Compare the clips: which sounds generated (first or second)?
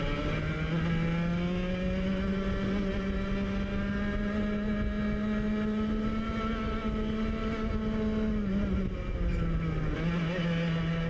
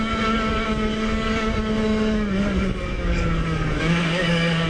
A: second